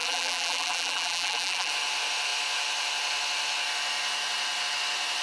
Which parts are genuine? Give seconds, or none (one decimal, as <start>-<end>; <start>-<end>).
1.7-5.2